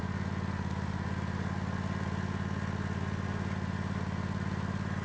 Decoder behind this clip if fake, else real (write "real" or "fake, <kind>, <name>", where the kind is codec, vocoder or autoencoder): real